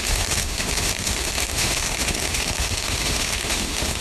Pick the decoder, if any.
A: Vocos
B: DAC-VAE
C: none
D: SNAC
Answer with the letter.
B